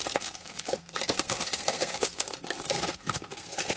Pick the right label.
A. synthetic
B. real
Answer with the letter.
A